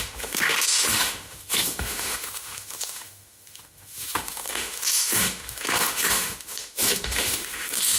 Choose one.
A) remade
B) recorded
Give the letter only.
A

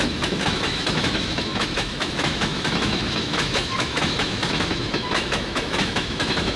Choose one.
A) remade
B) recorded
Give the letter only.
A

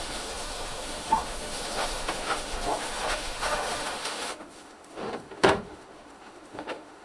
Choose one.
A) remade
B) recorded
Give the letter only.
A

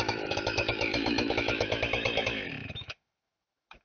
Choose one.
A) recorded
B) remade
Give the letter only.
B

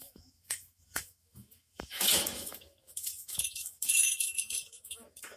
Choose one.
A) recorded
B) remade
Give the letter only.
B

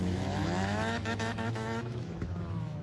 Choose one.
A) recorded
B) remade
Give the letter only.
B